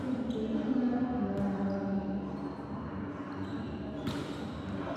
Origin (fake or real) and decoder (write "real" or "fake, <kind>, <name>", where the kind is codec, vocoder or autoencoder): real